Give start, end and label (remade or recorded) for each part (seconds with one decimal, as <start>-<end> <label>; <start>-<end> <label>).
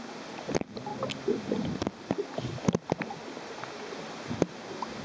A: 0.0-5.0 recorded